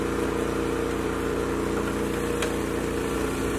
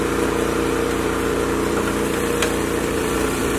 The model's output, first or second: second